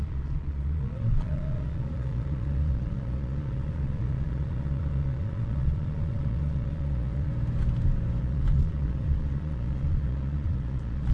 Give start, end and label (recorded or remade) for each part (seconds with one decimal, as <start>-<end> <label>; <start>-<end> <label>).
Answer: 0.0-7.3 remade; 7.3-8.2 recorded; 8.2-11.1 remade